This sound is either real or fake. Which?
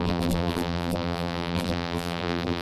fake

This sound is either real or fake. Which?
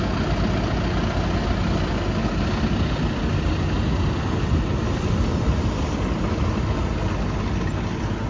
real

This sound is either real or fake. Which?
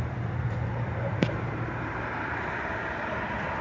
fake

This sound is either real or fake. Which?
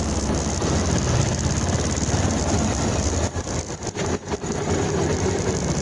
real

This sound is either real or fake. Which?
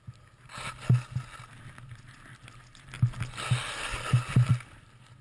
real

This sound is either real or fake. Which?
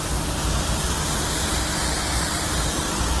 real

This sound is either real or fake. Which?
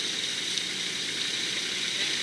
real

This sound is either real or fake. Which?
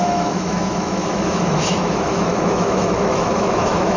fake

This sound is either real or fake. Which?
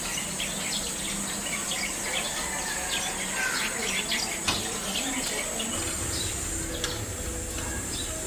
real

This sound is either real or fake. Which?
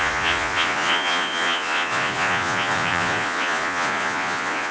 fake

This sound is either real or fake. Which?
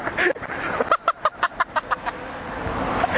real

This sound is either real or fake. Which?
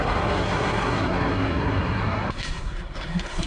fake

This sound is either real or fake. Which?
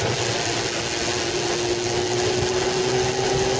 real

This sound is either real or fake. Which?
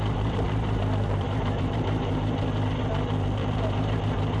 fake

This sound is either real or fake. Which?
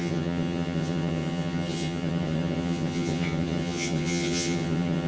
fake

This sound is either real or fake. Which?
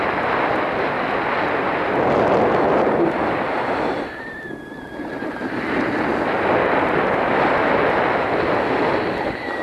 real